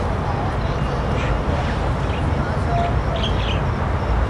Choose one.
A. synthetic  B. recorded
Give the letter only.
B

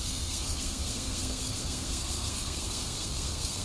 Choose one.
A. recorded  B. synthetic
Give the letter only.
B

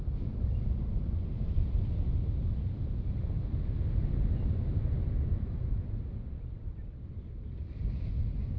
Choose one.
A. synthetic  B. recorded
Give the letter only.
B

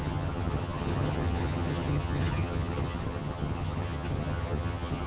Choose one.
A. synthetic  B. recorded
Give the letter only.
A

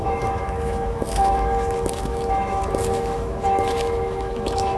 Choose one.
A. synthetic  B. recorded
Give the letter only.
A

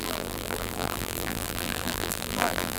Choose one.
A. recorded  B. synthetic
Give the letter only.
B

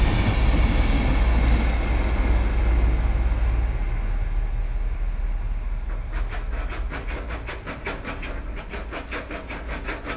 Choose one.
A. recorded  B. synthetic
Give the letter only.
A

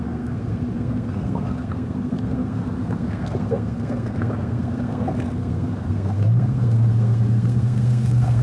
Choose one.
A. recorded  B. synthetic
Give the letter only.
B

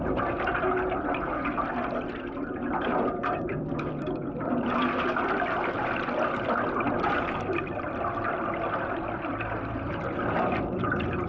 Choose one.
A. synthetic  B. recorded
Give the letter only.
A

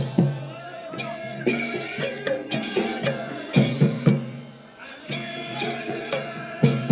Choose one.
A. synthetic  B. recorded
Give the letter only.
A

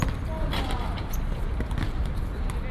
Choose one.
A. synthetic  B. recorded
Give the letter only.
B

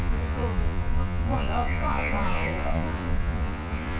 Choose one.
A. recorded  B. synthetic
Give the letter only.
B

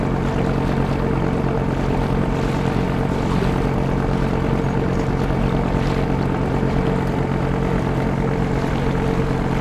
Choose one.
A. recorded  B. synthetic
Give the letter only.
A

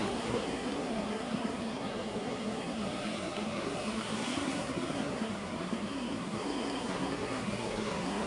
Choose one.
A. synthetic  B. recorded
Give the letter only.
A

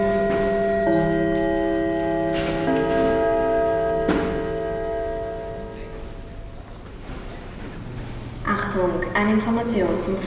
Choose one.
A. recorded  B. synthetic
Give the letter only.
A